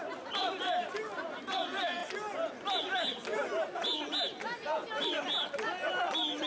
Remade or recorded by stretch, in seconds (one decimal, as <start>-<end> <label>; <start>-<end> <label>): 0.0-6.5 recorded